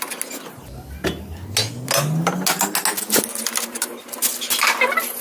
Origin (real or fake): real